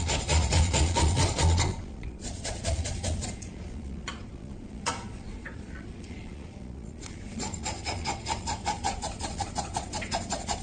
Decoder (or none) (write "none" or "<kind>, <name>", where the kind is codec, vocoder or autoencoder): vocoder, Vocos